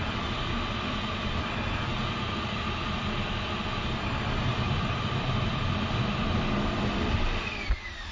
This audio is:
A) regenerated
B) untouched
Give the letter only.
A